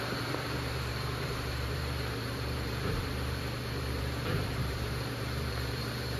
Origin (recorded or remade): remade